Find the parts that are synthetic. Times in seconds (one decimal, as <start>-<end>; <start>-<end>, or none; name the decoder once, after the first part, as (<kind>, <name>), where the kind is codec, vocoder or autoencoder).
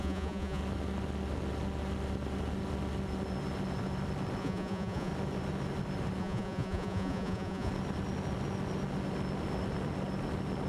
0.0-0.6 (vocoder, Vocos); 4.4-5.1; 6.2-7.7